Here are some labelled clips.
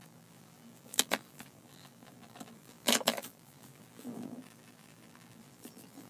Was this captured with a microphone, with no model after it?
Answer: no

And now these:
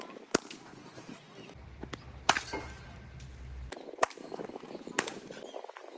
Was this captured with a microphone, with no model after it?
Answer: yes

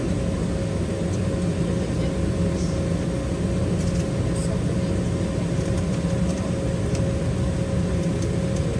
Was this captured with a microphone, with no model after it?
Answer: yes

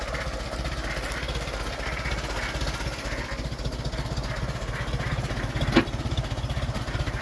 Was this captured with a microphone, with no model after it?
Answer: yes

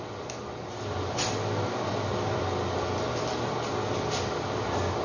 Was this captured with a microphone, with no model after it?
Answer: yes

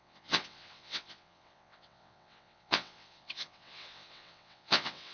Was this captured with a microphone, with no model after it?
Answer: no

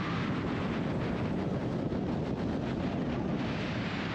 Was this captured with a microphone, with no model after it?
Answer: yes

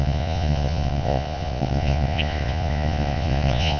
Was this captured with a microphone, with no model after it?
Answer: no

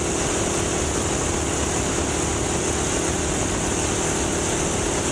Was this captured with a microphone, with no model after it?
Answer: yes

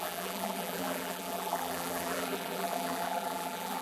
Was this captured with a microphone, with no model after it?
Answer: no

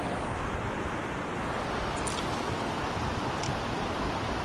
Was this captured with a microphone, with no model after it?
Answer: yes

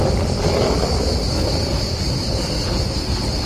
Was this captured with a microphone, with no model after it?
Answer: yes